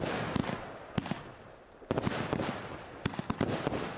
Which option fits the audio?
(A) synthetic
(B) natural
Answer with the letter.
B